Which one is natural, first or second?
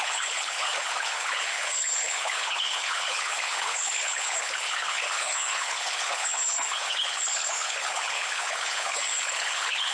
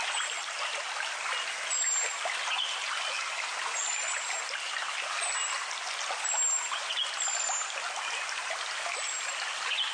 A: second